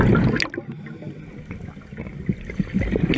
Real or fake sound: real